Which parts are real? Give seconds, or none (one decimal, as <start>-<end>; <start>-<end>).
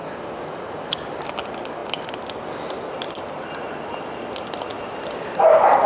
0.0-5.9